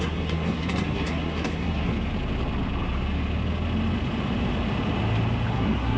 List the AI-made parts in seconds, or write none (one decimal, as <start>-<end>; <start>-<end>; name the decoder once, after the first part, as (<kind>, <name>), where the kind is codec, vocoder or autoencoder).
0.0-1.9 (codec, SNAC); 5.5-6.0